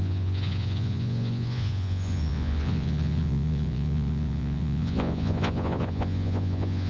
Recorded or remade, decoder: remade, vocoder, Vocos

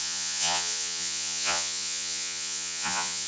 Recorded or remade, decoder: remade, vocoder, Vocos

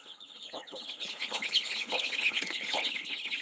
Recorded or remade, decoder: remade, codec, HILCodec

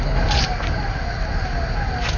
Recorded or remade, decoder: recorded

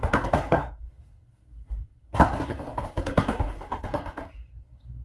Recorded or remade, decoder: remade, codec, SNAC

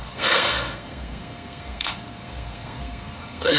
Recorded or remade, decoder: remade, codec, SNAC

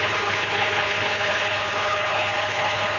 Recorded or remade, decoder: remade, codec, HILCodec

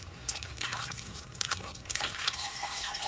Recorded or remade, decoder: remade, codec, SNAC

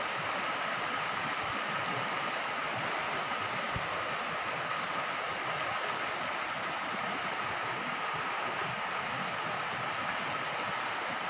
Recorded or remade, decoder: recorded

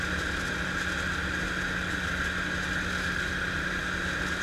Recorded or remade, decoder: recorded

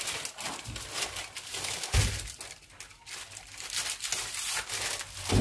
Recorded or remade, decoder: recorded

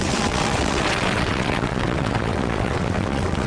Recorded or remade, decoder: remade, vocoder, WaveNeXt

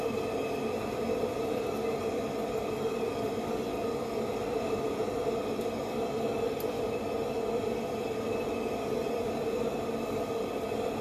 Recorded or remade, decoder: recorded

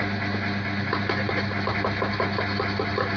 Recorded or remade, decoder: recorded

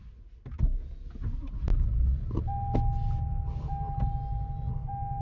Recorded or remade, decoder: recorded